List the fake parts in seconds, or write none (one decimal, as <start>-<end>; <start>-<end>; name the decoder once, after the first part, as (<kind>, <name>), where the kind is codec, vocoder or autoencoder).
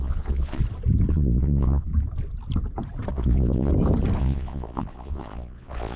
0.0-0.6 (vocoder, Vocos); 1.1-1.9; 3.1-3.7; 4.2-6.0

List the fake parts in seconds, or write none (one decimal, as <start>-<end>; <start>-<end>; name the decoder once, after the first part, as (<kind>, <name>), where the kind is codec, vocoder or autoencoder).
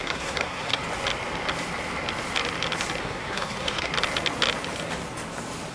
0.0-0.8 (codec, SNAC); 3.0-3.9